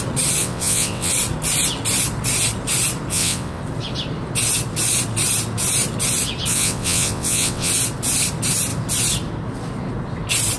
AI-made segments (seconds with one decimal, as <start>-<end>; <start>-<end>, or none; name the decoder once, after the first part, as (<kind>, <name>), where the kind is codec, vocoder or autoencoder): 0.4-1.1 (vocoder, WaveNeXt); 3.1-3.6; 6.5-7.7